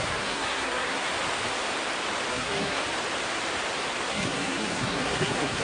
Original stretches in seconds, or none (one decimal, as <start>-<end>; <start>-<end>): 1.1-2.3; 2.8-4.1